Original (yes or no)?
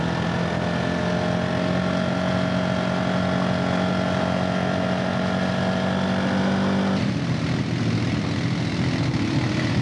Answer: yes